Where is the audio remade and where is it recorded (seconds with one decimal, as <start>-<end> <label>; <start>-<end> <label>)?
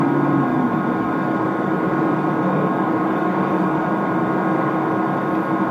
0.0-0.5 recorded; 0.5-3.9 remade; 3.9-5.7 recorded